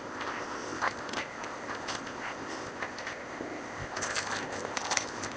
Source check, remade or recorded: remade